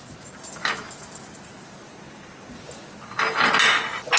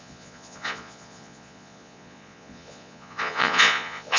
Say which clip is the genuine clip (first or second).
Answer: first